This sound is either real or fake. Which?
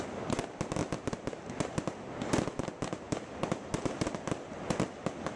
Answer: real